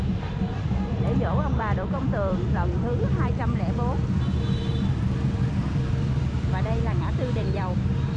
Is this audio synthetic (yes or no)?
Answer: yes